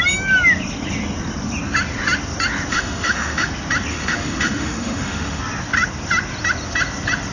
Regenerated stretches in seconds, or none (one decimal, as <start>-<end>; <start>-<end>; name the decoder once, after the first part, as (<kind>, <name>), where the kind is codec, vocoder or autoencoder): 2.7-3.5 (autoencoder, DAC-VAE); 3.9-5.4